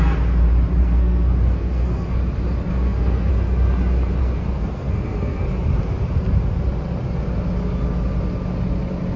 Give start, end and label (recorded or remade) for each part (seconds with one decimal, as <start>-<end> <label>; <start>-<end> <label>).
0.0-0.8 recorded; 0.8-2.2 remade; 2.2-2.7 recorded; 2.7-3.3 remade; 3.3-4.2 recorded; 4.2-5.4 remade; 5.4-9.2 recorded